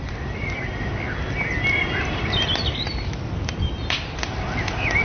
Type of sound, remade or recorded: recorded